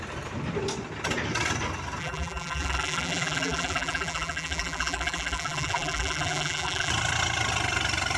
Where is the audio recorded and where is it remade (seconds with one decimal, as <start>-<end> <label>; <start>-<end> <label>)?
0.0-2.0 recorded; 2.0-6.9 remade; 6.9-8.2 recorded